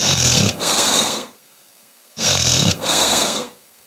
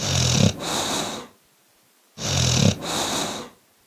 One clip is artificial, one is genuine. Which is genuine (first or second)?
second